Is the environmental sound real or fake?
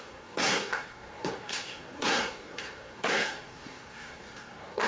fake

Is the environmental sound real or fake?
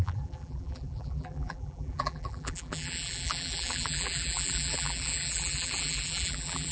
fake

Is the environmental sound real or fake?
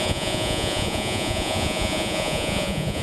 fake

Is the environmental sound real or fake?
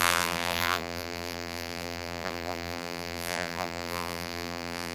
fake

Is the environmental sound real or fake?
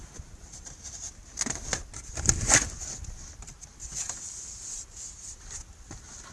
real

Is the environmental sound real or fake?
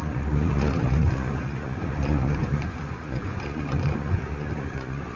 fake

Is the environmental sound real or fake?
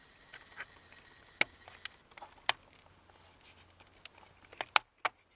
real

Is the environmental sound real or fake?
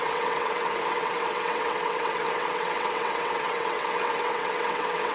fake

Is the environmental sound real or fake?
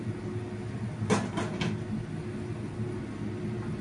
real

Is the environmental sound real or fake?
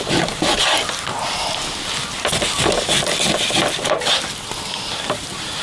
real